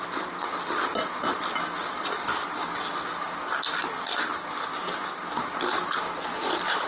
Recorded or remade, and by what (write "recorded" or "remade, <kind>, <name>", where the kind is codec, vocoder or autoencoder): recorded